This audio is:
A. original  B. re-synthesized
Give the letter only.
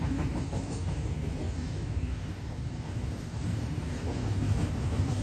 B